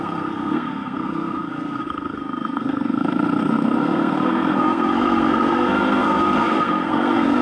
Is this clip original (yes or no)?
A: no